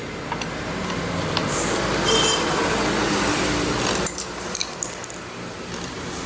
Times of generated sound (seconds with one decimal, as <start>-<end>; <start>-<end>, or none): none